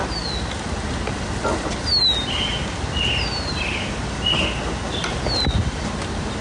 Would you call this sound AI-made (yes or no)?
no